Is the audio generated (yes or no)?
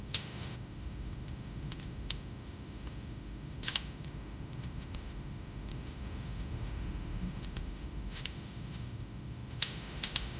yes